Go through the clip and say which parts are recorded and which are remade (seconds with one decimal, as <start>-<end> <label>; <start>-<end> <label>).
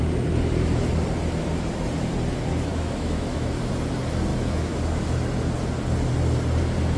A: 0.0-2.7 recorded; 2.7-3.7 remade; 3.7-4.3 recorded; 4.3-5.0 remade; 5.0-7.0 recorded